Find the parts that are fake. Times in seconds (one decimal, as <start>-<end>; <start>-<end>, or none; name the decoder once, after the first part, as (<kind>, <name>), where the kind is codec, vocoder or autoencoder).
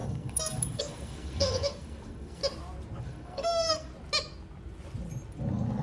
0.0-2.4 (codec, SNAC); 3.0-3.9